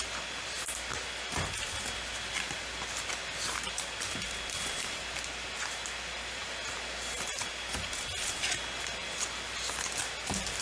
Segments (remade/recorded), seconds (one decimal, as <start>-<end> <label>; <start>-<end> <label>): 0.0-10.6 recorded